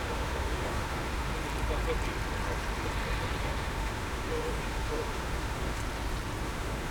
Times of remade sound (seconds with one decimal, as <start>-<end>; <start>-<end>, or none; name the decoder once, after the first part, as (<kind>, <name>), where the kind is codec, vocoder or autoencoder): 0.0-1.3 (autoencoder, DAC-VAE); 3.4-5.8; 6.4-6.9